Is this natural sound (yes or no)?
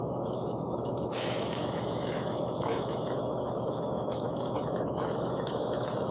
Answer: no